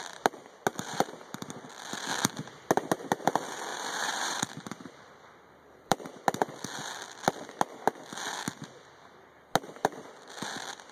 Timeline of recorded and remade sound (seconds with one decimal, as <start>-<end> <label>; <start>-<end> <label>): 0.0-0.7 recorded; 0.7-1.7 remade; 1.7-3.7 recorded; 3.7-6.1 remade; 6.1-10.9 recorded